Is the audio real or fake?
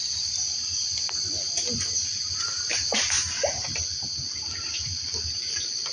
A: real